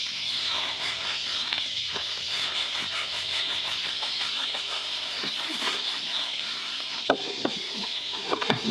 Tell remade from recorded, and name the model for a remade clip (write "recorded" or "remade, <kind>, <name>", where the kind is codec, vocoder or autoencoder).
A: remade, codec, SNAC